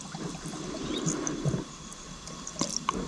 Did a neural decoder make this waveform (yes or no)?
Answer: no